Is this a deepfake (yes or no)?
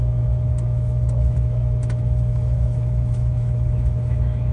yes